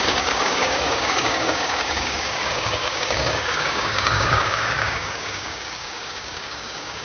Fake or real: fake